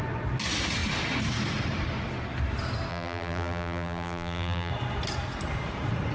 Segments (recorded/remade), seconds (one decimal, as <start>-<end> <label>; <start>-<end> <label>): 0.0-2.9 recorded; 2.9-4.7 remade; 4.7-6.1 recorded